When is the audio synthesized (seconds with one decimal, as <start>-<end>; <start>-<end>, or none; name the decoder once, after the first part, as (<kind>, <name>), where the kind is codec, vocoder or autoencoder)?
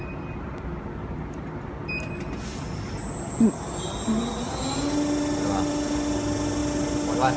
none